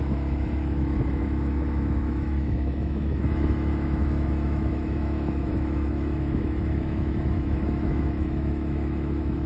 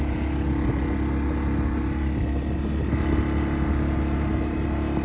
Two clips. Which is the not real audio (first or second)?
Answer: first